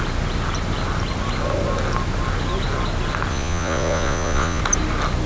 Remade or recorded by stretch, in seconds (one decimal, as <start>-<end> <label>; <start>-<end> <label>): 0.0-3.3 recorded; 3.3-4.6 remade; 4.6-5.3 recorded